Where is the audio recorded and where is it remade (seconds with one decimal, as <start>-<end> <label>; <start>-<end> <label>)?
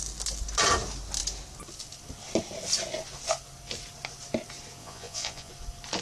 0.0-4.8 recorded; 4.8-5.5 remade; 5.5-6.0 recorded